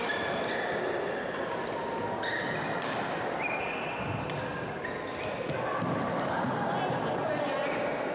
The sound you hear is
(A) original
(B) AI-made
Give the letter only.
A